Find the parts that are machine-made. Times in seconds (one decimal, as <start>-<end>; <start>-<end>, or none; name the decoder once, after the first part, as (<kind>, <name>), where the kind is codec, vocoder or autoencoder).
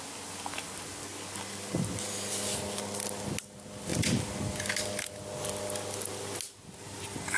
none